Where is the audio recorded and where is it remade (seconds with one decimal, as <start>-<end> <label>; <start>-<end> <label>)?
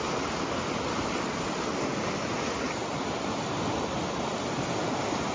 0.0-5.3 recorded